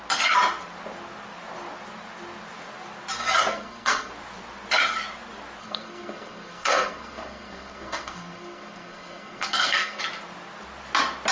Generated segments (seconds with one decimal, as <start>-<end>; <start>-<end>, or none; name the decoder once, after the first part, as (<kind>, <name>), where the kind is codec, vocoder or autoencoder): 3.5-4.1 (codec, SNAC); 5.6-10.0